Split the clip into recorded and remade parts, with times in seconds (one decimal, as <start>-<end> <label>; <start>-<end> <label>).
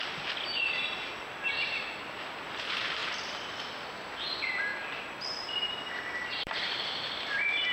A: 0.0-7.7 remade